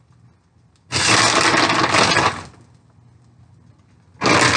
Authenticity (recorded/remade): recorded